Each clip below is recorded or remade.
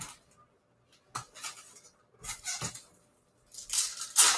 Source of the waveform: recorded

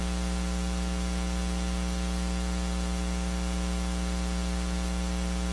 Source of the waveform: recorded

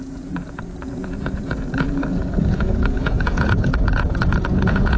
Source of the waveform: remade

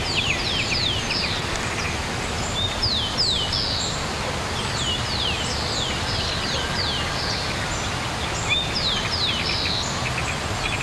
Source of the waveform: recorded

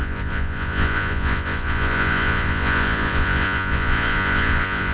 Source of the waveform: remade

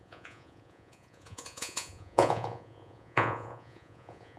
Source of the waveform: remade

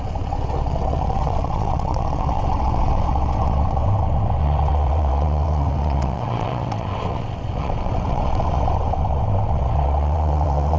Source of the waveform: remade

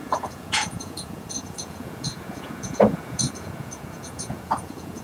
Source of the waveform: remade